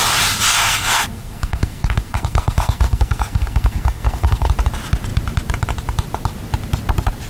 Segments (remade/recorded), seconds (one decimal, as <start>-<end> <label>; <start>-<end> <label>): 0.0-0.5 recorded; 0.5-4.5 remade; 4.5-7.3 recorded